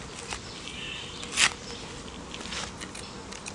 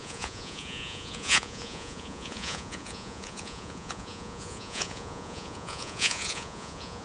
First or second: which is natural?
first